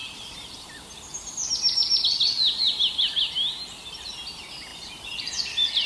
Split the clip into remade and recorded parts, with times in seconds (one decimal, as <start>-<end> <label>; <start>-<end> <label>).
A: 0.0-1.5 remade; 1.5-4.7 recorded; 4.7-5.3 remade; 5.3-5.9 recorded